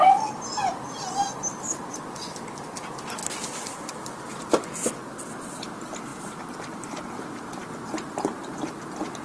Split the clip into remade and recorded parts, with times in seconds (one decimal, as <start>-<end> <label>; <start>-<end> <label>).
0.0-3.2 recorded; 3.2-3.9 remade; 3.9-9.2 recorded